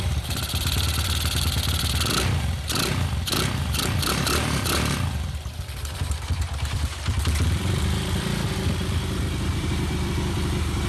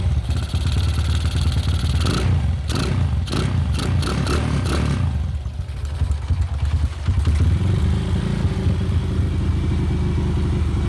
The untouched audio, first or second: second